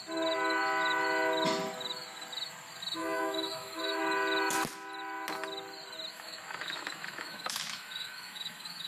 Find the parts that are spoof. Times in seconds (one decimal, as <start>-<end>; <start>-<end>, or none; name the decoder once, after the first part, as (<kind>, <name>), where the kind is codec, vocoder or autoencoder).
3.0-4.0 (autoencoder, DAC-VAE); 6.1-8.9

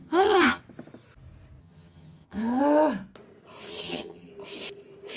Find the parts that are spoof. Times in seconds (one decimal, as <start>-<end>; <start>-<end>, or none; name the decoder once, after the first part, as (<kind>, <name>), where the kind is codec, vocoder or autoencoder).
0.0-0.6 (vocoder, HiFi-GAN); 1.6-2.6; 3.7-4.3

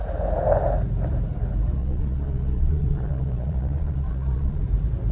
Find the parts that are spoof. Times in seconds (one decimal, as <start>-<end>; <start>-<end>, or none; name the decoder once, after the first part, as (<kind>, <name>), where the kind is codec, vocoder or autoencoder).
1.8-4.6 (vocoder, Vocos)

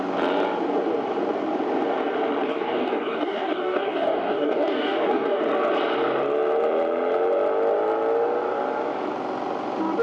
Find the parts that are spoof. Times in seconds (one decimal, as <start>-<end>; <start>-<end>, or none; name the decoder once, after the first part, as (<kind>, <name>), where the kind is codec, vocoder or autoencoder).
2.5-5.4 (codec, DAC)

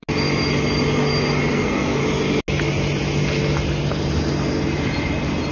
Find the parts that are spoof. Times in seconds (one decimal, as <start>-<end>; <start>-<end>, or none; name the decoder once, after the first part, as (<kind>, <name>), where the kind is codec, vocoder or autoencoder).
1.5-2.0 (codec, SNAC)

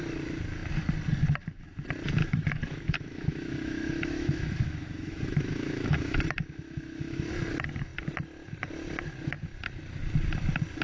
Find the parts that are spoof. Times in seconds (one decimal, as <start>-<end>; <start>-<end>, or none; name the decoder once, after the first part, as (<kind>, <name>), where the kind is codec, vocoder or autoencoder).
2.2-7.3 (autoencoder, DAC-VAE)

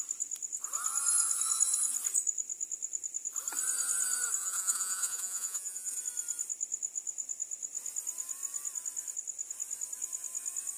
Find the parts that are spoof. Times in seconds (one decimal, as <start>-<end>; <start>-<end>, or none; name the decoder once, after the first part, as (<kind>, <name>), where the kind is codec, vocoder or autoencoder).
4.4-6.0 (vocoder, Vocos)